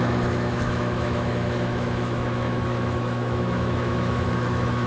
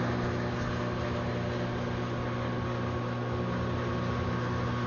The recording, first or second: second